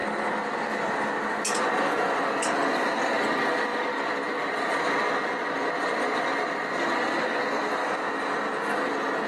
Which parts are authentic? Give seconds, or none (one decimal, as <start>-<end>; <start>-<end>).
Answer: 0.0-9.3